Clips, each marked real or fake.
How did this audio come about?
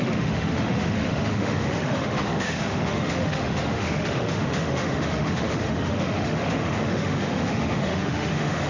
fake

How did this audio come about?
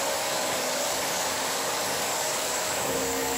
fake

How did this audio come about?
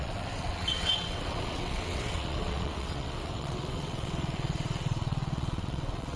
fake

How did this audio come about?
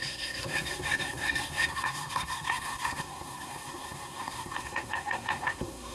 fake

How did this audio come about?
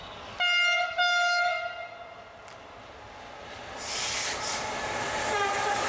real